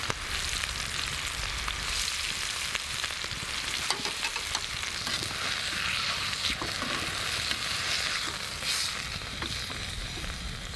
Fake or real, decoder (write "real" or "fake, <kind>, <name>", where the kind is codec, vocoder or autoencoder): real